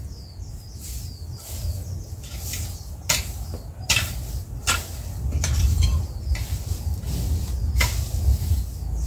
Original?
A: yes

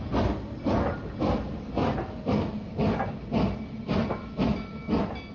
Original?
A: yes